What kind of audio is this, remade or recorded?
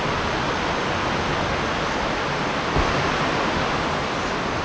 recorded